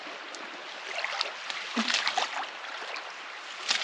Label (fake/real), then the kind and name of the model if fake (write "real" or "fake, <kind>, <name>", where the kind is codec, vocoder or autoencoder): real